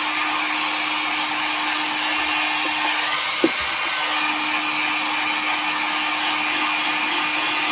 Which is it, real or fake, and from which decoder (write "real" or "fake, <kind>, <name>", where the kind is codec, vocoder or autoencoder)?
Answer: real